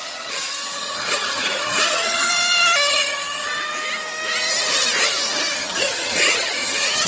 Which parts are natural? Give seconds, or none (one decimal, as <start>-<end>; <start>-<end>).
2.3-2.9; 3.5-5.6